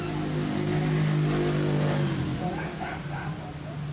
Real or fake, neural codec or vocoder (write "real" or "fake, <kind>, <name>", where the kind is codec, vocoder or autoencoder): real